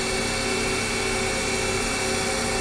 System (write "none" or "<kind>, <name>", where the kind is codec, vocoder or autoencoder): none